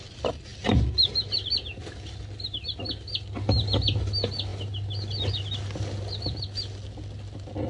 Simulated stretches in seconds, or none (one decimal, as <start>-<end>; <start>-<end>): none